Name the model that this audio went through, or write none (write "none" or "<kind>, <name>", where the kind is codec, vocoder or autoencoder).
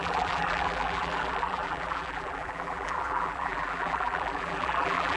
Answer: vocoder, BigVGAN v2